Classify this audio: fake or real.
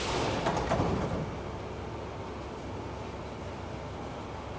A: real